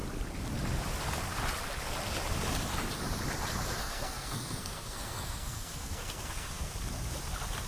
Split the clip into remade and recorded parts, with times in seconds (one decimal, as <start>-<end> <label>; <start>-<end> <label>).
0.0-3.8 recorded; 3.8-6.7 remade; 6.7-7.7 recorded